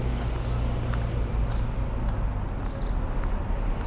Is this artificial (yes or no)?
no